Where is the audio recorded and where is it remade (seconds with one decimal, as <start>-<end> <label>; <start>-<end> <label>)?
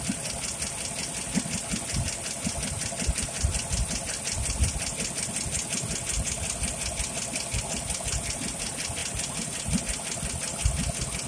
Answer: 0.0-9.0 recorded; 9.0-9.8 remade; 9.8-11.3 recorded